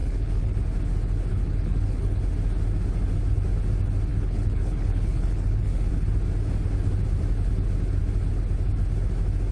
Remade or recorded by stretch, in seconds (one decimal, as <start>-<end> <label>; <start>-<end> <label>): 0.0-0.6 remade; 0.6-1.3 recorded; 1.3-2.2 remade; 2.2-4.1 recorded; 4.1-5.9 remade; 5.9-9.5 recorded